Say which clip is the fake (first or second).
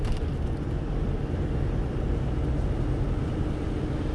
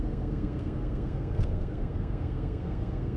second